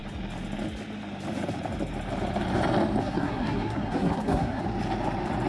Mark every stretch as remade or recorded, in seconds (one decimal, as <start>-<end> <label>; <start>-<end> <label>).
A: 0.0-3.0 recorded; 3.0-4.6 remade; 4.6-5.5 recorded